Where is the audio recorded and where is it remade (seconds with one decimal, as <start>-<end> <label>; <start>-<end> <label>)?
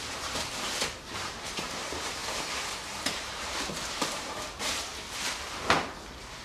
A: 0.0-4.9 remade; 4.9-6.4 recorded